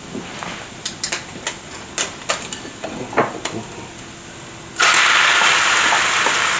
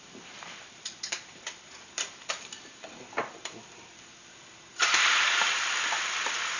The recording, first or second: first